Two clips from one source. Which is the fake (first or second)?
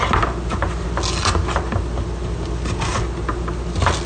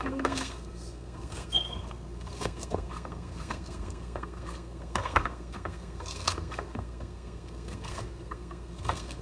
second